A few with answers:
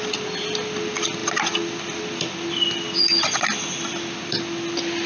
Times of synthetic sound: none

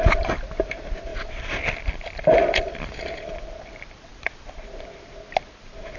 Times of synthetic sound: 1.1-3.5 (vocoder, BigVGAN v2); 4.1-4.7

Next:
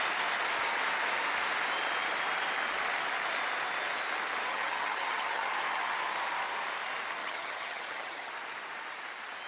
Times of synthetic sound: 4.5-5.5 (vocoder, HiFi-GAN); 7.2-8.3